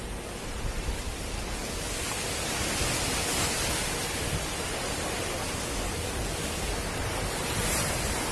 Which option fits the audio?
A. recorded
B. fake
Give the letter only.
A